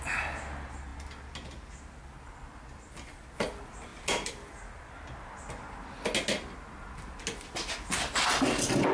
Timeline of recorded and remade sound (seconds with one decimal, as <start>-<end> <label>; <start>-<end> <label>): 0.0-8.9 recorded